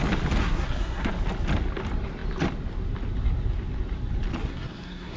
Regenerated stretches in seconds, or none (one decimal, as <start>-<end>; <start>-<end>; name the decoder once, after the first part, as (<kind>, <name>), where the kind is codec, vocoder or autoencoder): 0.4-1.1 (codec, SNAC); 4.4-5.2